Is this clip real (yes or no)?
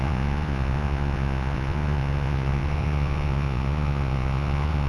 no